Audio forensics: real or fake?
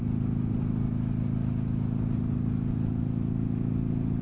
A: real